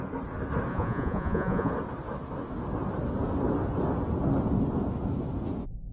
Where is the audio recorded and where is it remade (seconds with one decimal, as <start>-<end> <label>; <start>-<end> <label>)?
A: 0.0-0.7 recorded; 0.7-1.7 remade; 1.7-5.9 recorded

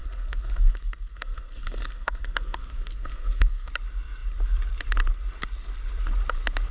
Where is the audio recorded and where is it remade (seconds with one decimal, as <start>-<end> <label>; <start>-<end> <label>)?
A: 0.0-3.7 remade; 3.7-6.7 recorded

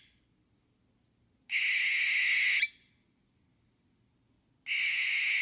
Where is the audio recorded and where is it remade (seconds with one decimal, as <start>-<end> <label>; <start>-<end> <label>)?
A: 0.0-5.4 recorded

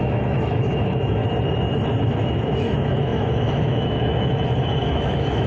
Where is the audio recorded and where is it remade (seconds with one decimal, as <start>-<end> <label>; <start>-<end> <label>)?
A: 0.0-1.2 remade; 1.2-2.0 recorded; 2.0-5.5 remade

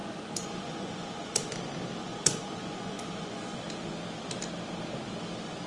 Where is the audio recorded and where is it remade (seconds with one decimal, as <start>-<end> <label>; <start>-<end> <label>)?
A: 0.0-1.5 remade; 1.5-2.0 recorded; 2.0-3.6 remade; 3.6-5.7 recorded